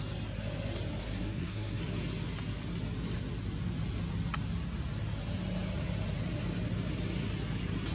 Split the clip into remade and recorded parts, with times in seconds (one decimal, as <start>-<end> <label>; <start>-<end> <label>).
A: 0.0-1.0 recorded; 1.0-1.8 remade; 1.8-7.9 recorded